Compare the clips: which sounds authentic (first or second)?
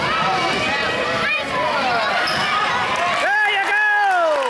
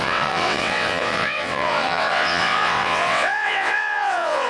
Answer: first